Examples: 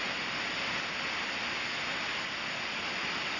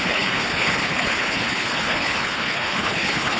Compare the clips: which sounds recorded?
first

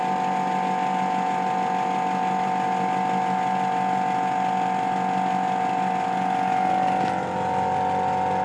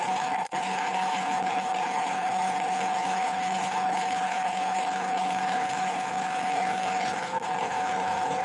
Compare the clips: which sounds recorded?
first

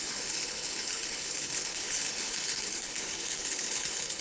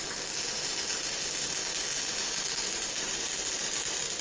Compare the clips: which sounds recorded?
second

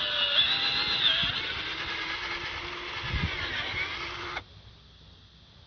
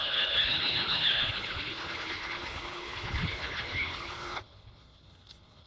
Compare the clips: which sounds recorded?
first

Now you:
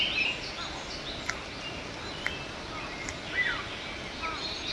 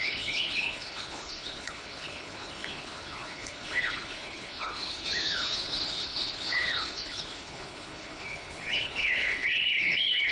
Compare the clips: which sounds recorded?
first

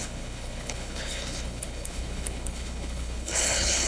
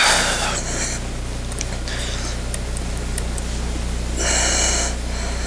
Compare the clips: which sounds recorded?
second